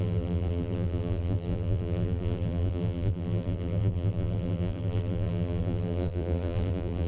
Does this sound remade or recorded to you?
remade